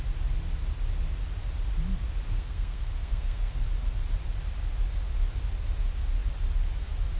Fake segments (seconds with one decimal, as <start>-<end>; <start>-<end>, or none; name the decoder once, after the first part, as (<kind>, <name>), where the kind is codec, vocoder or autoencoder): 2.3-3.5 (codec, SNAC)